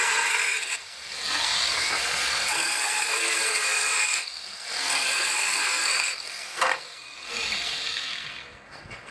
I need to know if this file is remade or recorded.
remade